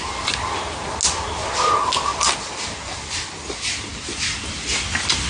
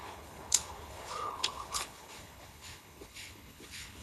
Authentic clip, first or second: first